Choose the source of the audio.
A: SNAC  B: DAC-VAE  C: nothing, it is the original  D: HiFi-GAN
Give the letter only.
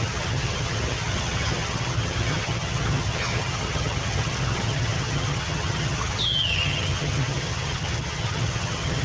D